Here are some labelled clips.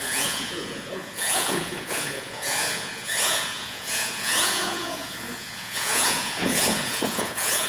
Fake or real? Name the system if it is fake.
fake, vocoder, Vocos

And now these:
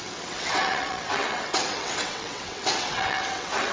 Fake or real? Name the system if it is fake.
fake, vocoder, WaveNeXt